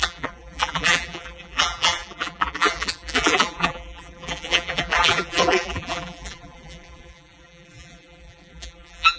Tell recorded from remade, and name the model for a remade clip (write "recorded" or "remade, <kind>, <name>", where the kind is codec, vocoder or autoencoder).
remade, vocoder, BigVGAN v2